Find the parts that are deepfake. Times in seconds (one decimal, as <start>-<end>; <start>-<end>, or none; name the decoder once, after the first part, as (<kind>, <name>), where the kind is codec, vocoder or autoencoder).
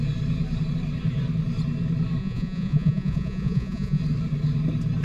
2.2-4.0 (vocoder, Vocos)